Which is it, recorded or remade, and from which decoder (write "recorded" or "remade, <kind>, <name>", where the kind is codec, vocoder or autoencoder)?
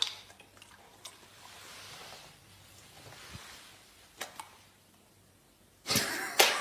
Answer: recorded